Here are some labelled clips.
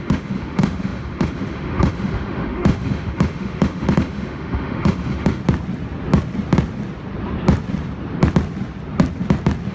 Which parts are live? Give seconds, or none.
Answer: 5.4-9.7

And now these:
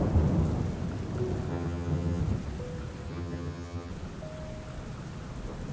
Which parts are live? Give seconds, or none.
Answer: 0.0-1.5; 2.2-3.1; 3.9-5.7